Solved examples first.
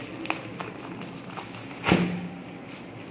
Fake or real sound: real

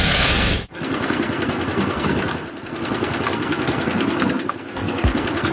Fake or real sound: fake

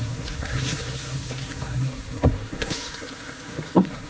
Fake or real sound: fake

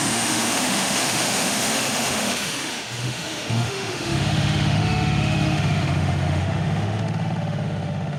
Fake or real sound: fake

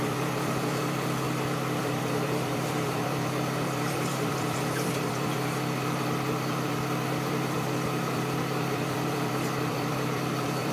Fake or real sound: fake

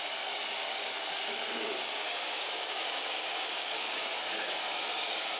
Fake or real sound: fake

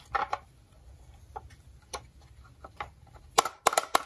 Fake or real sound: real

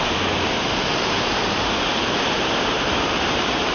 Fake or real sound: fake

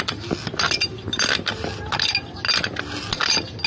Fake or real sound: real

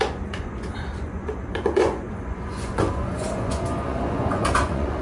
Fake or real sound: fake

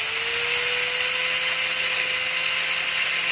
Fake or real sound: real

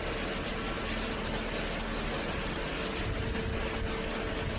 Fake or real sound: real